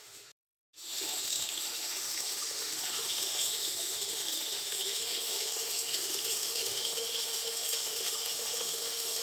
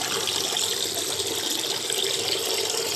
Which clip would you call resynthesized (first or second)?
first